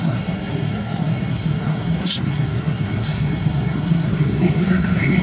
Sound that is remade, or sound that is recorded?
remade